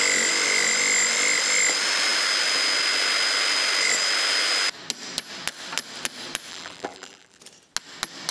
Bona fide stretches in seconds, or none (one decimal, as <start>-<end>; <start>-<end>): 0.0-6.5; 7.4-8.3